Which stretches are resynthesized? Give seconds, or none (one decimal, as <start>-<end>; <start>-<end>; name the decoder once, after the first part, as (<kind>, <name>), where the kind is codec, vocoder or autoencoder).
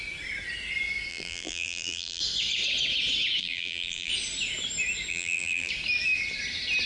1.1-2.2 (vocoder, BigVGAN v2); 3.4-4.1; 5.1-5.7